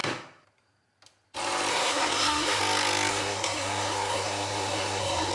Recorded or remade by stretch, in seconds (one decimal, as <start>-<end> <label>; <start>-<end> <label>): 0.0-1.7 recorded; 1.7-2.6 remade; 2.6-3.1 recorded; 3.1-5.3 remade